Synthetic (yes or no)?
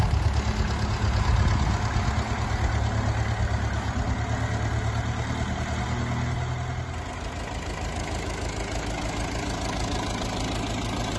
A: no